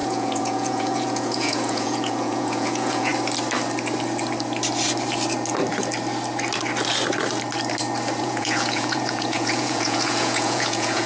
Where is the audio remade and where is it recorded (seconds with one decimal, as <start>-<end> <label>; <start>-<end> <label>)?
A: 0.0-3.1 remade; 3.1-8.2 recorded; 8.2-11.1 remade